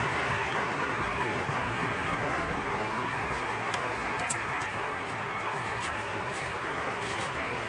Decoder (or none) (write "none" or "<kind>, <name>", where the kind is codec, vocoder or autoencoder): codec, SNAC